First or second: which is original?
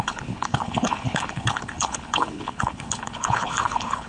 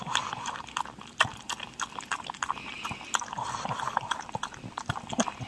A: second